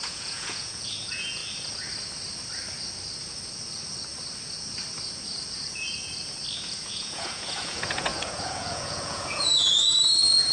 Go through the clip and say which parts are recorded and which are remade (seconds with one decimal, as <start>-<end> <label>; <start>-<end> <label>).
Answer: 0.0-1.4 remade; 1.4-6.7 recorded; 6.7-10.5 remade